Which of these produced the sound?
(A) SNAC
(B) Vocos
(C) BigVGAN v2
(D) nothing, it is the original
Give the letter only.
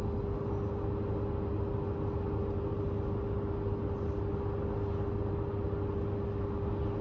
D